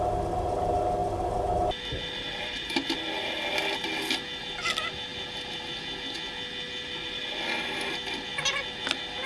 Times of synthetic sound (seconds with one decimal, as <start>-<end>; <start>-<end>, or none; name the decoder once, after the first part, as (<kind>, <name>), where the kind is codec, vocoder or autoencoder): none